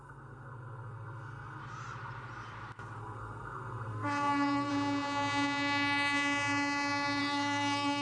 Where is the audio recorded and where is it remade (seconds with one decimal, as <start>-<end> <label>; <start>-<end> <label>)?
0.0-1.6 remade; 1.6-3.0 recorded; 3.0-4.7 remade; 4.7-7.2 recorded; 7.2-8.0 remade